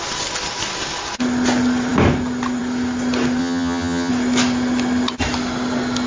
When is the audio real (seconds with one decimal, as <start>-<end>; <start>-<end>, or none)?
0.0-3.4; 4.1-6.1